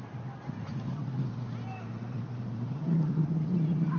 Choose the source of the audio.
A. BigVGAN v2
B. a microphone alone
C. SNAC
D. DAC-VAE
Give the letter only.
B